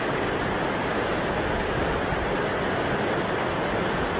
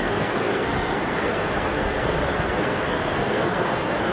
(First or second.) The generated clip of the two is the second